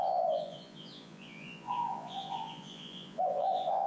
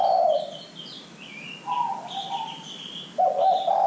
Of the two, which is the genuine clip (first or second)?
second